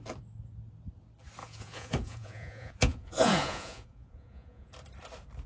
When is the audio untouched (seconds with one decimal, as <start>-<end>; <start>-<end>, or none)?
0.0-1.4; 4.7-5.5